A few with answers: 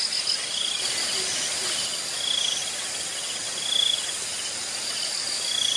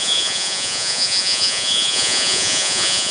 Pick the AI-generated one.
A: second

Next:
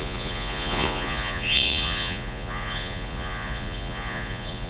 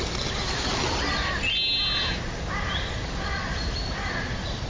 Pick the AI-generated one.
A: first